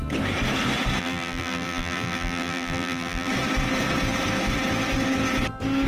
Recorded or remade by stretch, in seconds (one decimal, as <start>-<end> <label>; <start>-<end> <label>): 0.0-1.0 recorded; 1.0-3.3 remade; 3.3-5.9 recorded